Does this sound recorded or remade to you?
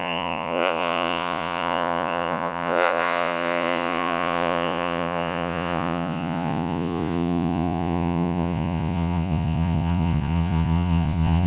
remade